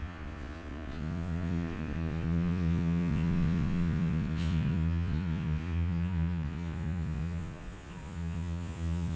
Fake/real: fake